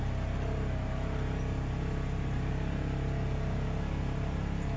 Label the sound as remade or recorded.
recorded